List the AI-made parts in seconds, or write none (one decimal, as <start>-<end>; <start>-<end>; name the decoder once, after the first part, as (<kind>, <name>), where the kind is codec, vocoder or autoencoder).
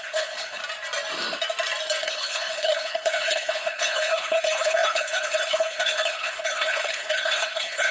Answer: 0.0-0.6 (codec, HILCodec); 2.0-7.9